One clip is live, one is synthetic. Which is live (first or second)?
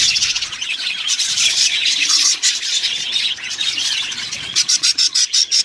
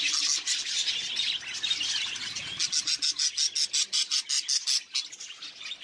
second